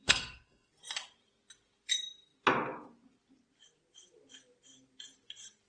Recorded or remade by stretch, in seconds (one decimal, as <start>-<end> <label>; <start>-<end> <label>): 0.0-0.7 remade; 0.7-5.7 recorded